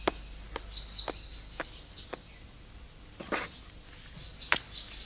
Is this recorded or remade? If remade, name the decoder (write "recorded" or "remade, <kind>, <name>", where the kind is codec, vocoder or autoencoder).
recorded